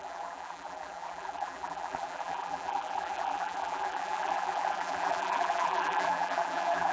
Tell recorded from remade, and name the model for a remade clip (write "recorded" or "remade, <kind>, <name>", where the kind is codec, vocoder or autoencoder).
remade, vocoder, BigVGAN v2